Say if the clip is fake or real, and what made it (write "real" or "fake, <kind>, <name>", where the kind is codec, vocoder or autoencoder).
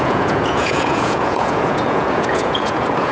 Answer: fake, vocoder, Vocos